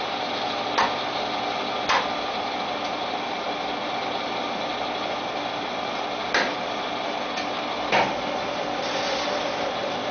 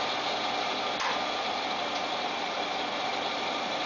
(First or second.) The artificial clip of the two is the second